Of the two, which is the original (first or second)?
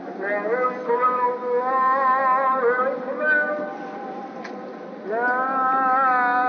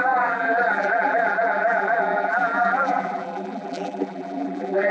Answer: first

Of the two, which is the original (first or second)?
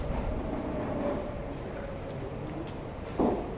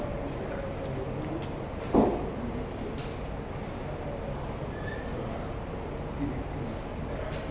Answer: second